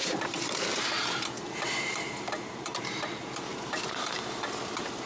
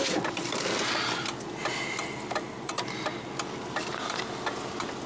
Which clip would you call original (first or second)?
second